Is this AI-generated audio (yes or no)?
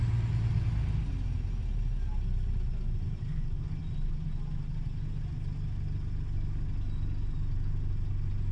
no